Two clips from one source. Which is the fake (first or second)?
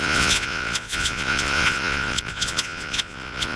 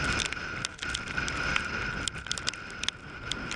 first